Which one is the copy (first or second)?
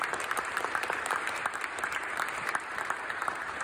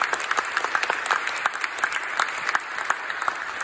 first